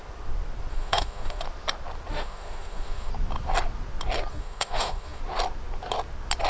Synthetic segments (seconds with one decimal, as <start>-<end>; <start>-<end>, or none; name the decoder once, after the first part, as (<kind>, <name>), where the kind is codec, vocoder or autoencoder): 0.7-1.4 (autoencoder, DAC-VAE); 2.1-3.1; 4.3-5.2